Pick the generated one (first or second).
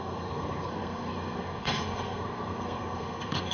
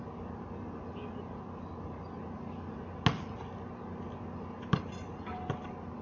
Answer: first